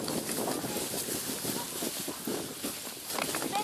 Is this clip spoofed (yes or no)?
no